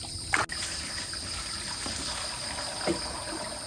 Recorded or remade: recorded